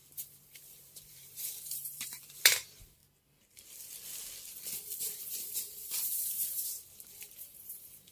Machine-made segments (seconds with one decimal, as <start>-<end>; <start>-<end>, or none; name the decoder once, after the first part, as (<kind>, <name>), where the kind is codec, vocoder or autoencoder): 0.0-3.0 (vocoder, BigVGAN v2); 5.0-8.1